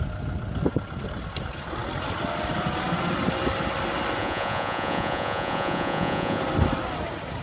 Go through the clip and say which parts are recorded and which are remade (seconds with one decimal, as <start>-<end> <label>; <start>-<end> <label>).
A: 0.0-4.2 recorded; 4.2-6.4 remade; 6.4-7.4 recorded